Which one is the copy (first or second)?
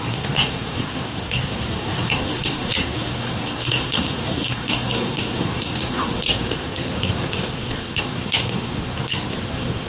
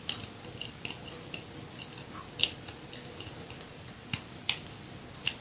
first